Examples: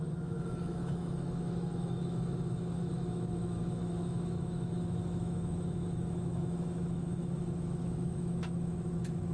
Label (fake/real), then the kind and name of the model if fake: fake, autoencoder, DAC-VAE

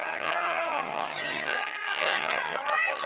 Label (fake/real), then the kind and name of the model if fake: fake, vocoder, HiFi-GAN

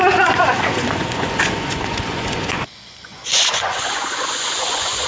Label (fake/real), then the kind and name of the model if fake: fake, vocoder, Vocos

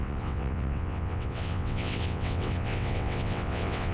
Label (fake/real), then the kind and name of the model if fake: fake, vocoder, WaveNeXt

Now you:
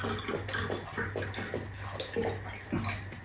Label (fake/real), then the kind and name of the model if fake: real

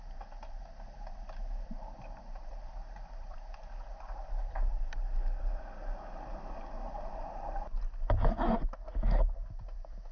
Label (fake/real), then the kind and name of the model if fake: real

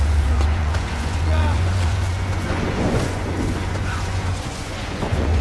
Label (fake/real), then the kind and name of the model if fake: fake, vocoder, Vocos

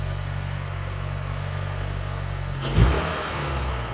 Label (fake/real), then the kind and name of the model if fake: fake, codec, SNAC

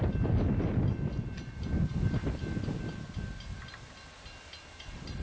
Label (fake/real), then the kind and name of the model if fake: real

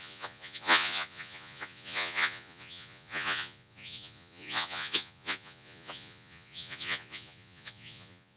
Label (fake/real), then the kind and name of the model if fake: fake, vocoder, Vocos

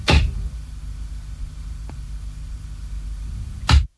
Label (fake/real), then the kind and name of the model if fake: real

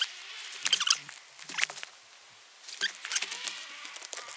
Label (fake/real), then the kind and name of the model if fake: real